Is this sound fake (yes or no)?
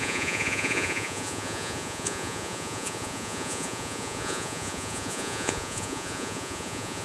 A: yes